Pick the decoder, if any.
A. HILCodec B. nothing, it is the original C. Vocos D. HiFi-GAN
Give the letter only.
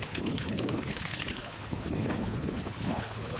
A